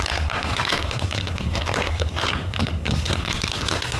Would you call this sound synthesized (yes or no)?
yes